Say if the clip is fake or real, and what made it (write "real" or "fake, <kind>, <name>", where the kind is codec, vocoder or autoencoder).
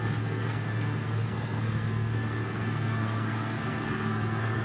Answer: fake, codec, SNAC